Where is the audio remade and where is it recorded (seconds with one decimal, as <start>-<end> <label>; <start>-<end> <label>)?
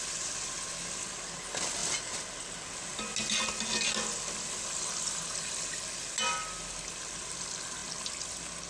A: 0.0-8.7 recorded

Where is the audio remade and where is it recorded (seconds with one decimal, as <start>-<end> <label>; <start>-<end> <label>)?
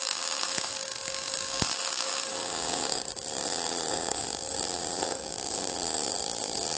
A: 0.0-6.8 remade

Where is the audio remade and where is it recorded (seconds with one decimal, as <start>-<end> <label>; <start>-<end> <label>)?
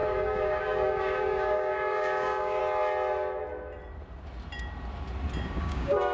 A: 0.0-2.6 remade; 2.6-5.6 recorded; 5.6-6.1 remade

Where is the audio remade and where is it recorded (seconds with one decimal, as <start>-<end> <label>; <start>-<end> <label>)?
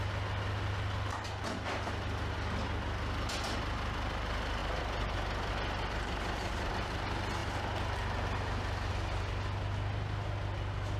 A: 0.0-11.0 recorded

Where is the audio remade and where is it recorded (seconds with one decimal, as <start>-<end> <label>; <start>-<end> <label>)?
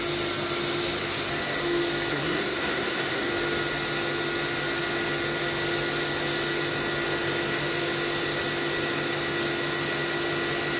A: 0.0-2.1 recorded; 2.1-3.3 remade; 3.3-10.8 recorded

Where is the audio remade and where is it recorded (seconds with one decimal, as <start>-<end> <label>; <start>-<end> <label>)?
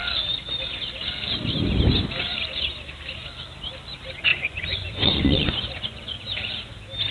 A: 0.0-4.3 recorded; 4.3-6.2 remade; 6.2-7.1 recorded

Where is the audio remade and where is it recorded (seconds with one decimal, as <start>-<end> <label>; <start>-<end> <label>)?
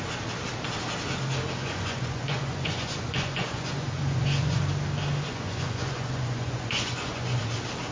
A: 0.0-1.6 recorded; 1.6-4.6 remade; 4.6-5.3 recorded; 5.3-7.4 remade; 7.4-7.9 recorded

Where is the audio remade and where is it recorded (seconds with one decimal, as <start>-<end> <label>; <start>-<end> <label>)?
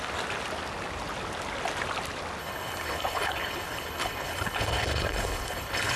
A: 0.0-2.4 recorded; 2.4-6.0 remade